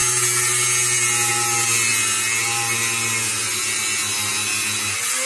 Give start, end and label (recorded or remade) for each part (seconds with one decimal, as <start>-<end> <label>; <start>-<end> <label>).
0.0-5.3 recorded